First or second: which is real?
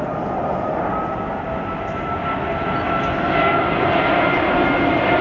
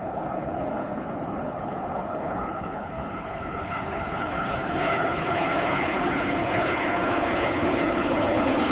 first